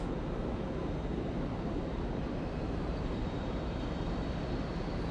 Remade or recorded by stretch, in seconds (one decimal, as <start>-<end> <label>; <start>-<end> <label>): 0.0-1.1 recorded; 1.1-4.2 remade; 4.2-5.1 recorded